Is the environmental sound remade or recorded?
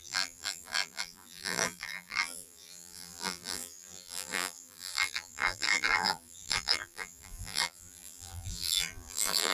remade